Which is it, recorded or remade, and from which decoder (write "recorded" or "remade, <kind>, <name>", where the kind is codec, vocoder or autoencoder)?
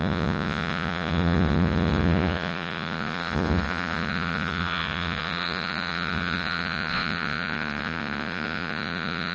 remade, vocoder, Vocos